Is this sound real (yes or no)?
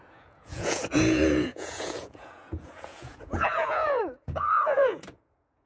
no